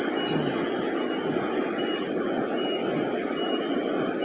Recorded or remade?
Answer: recorded